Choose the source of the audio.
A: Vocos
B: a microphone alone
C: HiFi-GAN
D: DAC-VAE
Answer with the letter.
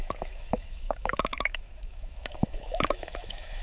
D